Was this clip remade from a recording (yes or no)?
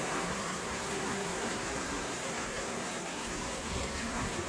yes